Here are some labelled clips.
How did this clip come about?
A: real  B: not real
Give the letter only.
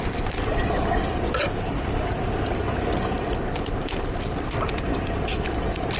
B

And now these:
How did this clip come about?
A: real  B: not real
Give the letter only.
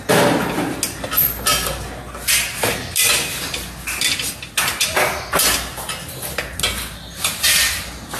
A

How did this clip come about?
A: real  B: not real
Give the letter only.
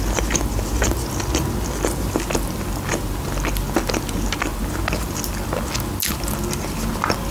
A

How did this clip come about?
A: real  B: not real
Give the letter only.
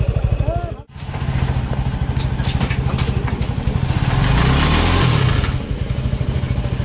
A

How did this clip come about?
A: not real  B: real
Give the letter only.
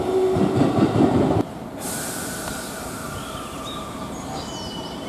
B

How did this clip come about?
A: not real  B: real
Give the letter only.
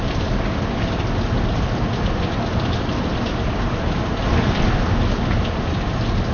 B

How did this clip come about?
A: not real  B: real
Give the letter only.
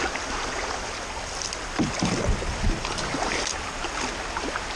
B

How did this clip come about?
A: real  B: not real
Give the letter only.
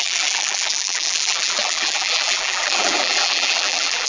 B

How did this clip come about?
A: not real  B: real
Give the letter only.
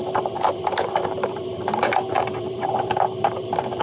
A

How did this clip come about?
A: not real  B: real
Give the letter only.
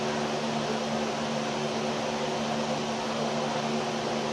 B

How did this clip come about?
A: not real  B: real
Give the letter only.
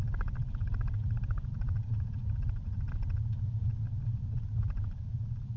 A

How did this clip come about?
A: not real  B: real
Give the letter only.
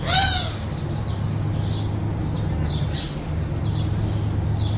B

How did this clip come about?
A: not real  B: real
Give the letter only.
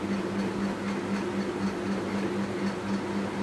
B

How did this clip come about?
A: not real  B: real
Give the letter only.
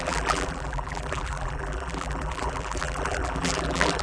A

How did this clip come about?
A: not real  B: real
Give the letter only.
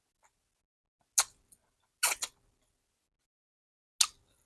B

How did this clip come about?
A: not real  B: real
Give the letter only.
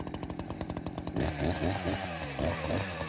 A